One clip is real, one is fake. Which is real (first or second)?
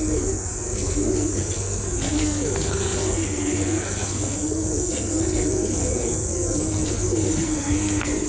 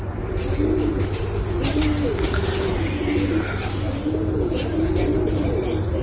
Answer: second